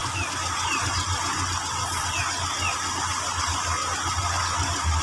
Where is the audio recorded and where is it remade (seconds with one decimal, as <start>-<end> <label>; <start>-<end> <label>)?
0.0-5.0 recorded